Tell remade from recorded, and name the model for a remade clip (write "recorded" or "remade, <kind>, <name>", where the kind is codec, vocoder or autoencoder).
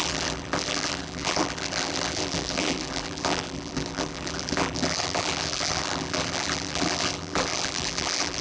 remade, vocoder, BigVGAN v2